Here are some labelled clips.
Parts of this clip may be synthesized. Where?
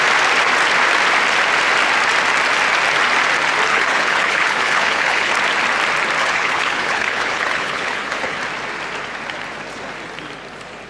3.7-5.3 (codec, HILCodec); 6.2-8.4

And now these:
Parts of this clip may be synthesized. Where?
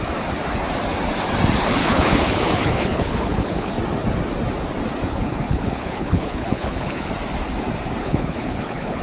1.8-3.7 (codec, HILCodec); 5.1-7.1; 8.0-9.0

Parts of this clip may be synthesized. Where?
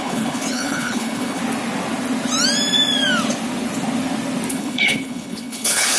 0.0-1.4 (codec, HILCodec); 4.5-6.0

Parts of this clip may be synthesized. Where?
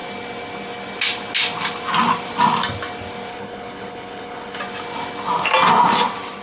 3.3-4.6 (codec, HILCodec)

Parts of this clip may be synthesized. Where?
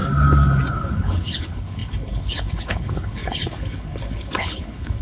0.7-5.0 (codec, HILCodec)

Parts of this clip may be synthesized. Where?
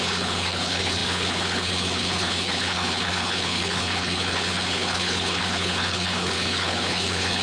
0.0-7.4 (codec, HILCodec)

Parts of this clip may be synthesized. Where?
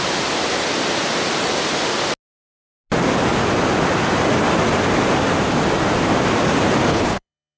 6.9-7.6 (codec, HILCodec)